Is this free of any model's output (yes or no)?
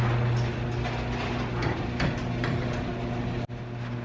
yes